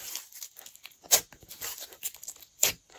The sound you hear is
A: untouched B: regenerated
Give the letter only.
A